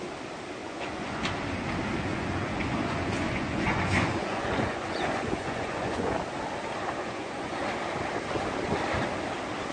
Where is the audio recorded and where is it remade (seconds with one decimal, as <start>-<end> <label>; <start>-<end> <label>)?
0.0-0.6 recorded; 0.6-1.2 remade; 1.2-2.1 recorded; 2.1-6.1 remade; 6.1-7.0 recorded; 7.0-7.7 remade; 7.7-9.7 recorded